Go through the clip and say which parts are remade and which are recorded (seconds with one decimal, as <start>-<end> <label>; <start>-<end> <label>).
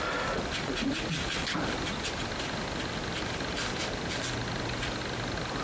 0.0-1.2 recorded; 1.2-1.9 remade; 1.9-3.1 recorded; 3.1-3.8 remade; 3.8-5.6 recorded